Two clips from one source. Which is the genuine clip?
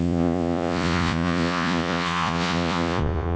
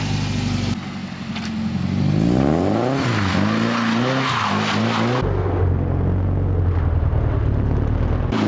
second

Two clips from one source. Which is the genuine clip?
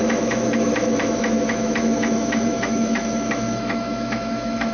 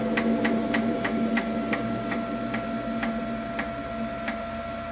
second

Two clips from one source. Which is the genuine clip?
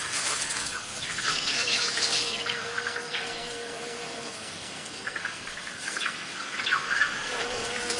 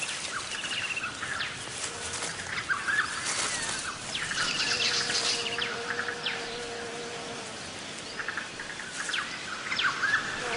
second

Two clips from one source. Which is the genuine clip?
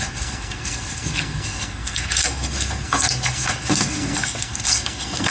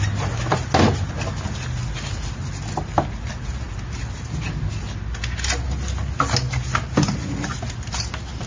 second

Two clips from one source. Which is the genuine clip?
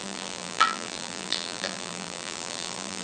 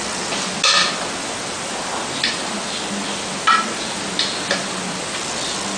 second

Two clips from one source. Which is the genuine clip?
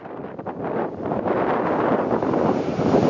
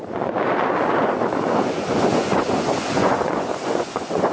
first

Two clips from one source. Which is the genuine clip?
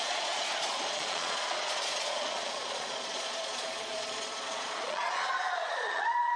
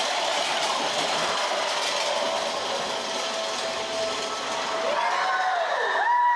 second